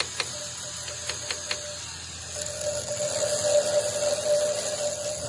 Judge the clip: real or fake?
real